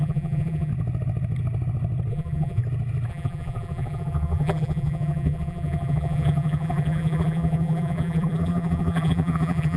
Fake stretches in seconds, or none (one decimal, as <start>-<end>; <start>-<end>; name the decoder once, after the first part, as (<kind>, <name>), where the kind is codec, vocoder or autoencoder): 0.0-0.7 (vocoder, BigVGAN v2); 2.1-2.6; 3.1-9.8